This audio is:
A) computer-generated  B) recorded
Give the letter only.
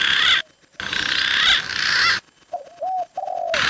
B